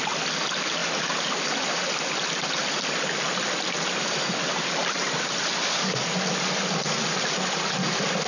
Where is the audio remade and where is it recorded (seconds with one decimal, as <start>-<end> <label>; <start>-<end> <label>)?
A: 0.0-8.3 recorded